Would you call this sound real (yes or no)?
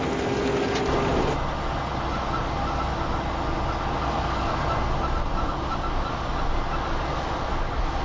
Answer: yes